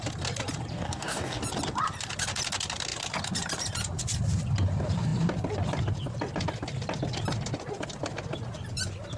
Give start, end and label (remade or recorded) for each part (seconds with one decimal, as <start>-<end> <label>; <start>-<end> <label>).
0.0-0.7 recorded; 0.7-1.4 remade; 1.4-9.2 recorded